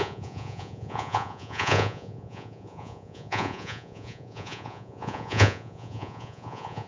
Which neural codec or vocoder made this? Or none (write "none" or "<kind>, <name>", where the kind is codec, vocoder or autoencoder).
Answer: vocoder, Vocos